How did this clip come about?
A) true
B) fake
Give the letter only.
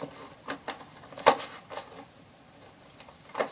A